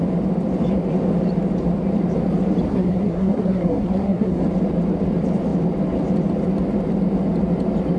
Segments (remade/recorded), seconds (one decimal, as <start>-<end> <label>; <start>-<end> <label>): 0.0-2.7 recorded; 2.7-4.4 remade; 4.4-8.0 recorded